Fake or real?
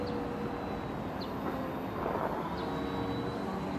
real